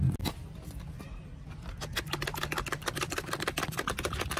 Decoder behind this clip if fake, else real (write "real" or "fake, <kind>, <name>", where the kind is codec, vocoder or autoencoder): real